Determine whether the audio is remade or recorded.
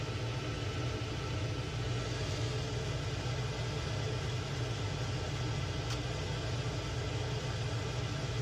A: recorded